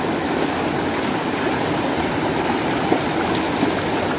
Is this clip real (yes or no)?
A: yes